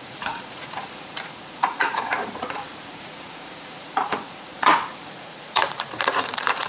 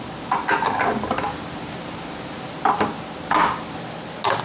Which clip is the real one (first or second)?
second